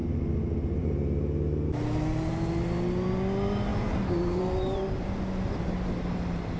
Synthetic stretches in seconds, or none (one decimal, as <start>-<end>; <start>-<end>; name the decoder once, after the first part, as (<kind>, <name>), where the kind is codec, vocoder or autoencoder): 3.7-5.2 (vocoder, BigVGAN v2)